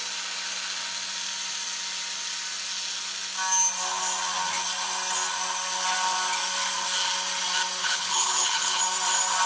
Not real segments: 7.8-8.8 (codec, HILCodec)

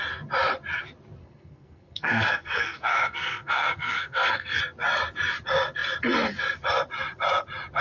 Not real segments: 1.2-4.6 (codec, SNAC)

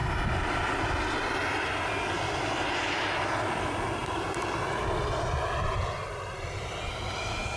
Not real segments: none

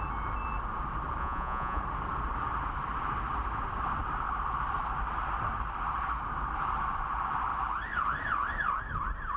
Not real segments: 1.2-1.8 (vocoder, Vocos)

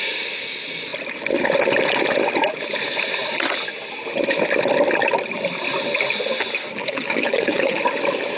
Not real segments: 6.8-7.8 (codec, HILCodec)

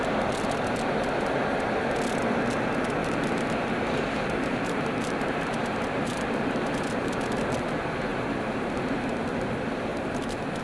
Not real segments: 3.0-7.1 (vocoder, BigVGAN v2); 8.1-8.7; 9.9-10.6

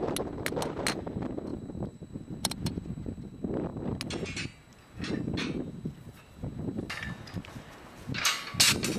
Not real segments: 1.5-3.2 (vocoder, BigVGAN v2)